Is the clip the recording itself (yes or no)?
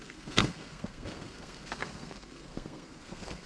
no